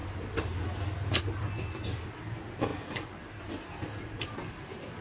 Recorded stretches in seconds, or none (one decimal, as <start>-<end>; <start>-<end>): 1.2-5.0